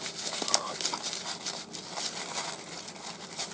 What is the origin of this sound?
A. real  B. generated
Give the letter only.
A